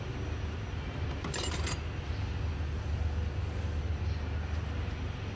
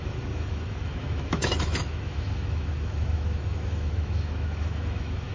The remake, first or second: second